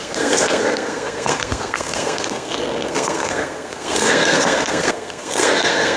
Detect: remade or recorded remade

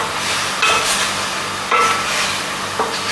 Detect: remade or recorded recorded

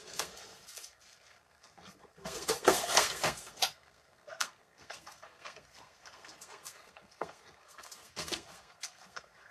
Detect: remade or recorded remade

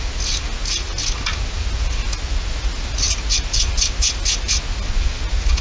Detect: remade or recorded recorded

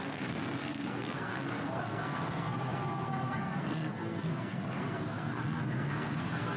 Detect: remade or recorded remade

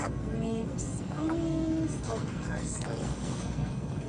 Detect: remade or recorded remade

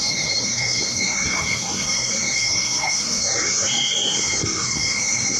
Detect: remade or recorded remade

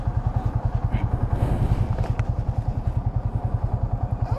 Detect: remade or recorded recorded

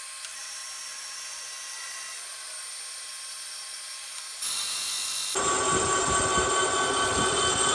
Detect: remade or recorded recorded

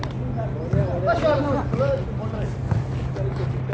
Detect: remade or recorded recorded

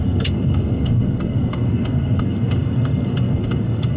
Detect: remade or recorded remade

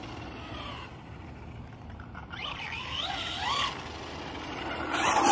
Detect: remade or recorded recorded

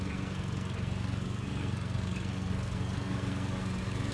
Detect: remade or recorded remade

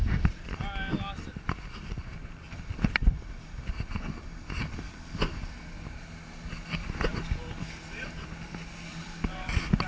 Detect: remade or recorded recorded